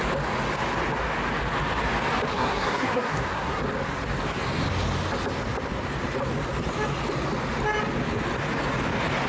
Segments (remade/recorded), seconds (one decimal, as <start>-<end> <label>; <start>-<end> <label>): 0.0-2.3 recorded; 2.3-3.6 remade; 3.6-9.3 recorded